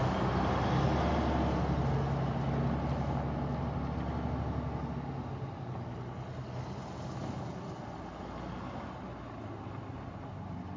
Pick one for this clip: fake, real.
real